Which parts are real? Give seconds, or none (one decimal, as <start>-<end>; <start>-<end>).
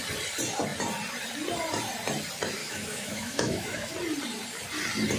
0.0-2.6; 3.9-5.2